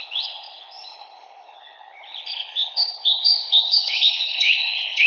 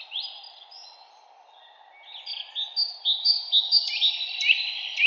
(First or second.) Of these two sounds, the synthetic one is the first